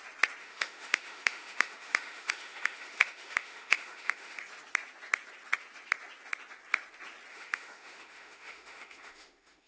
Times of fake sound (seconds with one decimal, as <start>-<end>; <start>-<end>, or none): 0.4-4.4; 7.3-9.7